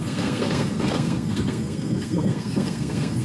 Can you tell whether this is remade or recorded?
remade